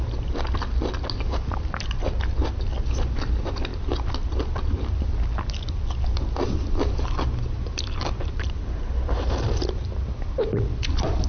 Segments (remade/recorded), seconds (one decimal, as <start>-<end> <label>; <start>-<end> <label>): 0.0-11.3 recorded